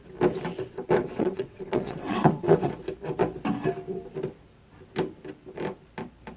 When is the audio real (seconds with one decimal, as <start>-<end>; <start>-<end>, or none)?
0.0-1.0; 2.7-6.4